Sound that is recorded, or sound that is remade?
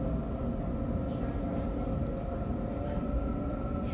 recorded